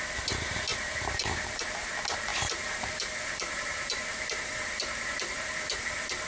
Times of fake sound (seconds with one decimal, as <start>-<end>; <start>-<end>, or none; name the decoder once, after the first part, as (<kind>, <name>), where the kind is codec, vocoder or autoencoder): 0.7-1.9 (vocoder, BigVGAN v2); 2.3-6.3